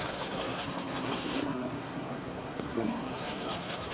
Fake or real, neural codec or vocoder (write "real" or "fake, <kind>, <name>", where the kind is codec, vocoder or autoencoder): fake, codec, SNAC